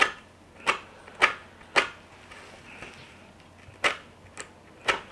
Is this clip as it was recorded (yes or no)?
yes